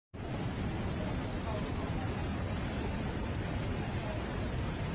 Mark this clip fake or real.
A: real